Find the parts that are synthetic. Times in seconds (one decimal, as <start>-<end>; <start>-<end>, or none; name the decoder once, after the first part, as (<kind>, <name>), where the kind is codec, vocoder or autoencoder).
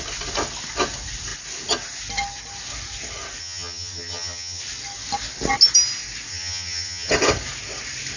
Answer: 3.4-4.6 (vocoder, HiFi-GAN); 6.3-7.1